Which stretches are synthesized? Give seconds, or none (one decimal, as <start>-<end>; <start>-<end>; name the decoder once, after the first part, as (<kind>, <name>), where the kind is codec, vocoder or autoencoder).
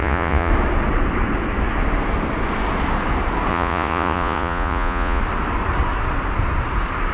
0.0-0.5 (vocoder, Vocos); 3.5-5.2